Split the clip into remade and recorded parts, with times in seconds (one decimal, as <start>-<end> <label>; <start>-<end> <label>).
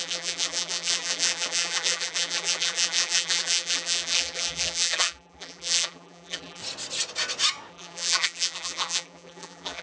0.0-6.6 remade; 6.6-7.7 recorded; 7.7-9.8 remade